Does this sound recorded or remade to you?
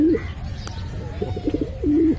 recorded